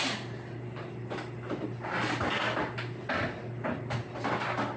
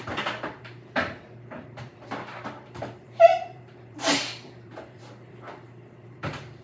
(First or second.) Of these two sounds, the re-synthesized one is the second